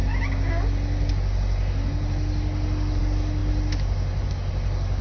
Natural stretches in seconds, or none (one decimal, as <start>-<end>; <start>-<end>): 0.0-5.0